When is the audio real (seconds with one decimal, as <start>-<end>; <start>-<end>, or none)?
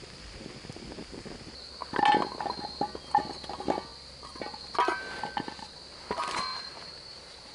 0.0-6.5